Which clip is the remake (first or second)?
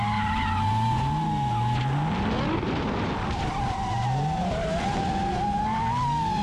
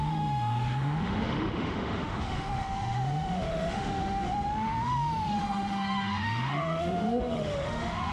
second